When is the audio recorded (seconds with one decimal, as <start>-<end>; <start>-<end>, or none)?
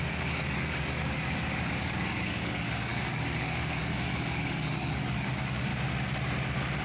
5.7-6.8